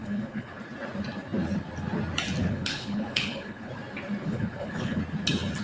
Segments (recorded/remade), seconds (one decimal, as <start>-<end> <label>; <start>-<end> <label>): 0.0-0.6 remade; 0.6-2.4 recorded; 2.4-3.7 remade; 3.7-4.2 recorded; 4.2-5.0 remade; 5.0-5.6 recorded